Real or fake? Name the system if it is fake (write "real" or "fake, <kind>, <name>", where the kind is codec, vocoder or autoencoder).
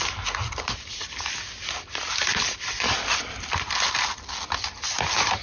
real